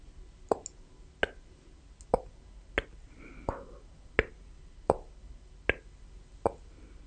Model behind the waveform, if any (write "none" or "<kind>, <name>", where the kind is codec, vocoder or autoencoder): none